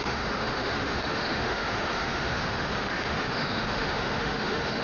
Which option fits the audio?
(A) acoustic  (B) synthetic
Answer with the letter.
B